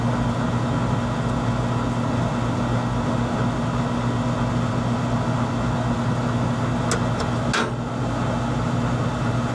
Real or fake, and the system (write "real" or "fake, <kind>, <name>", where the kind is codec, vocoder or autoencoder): real